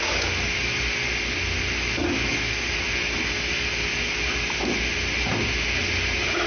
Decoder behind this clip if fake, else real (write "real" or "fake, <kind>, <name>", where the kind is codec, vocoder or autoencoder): real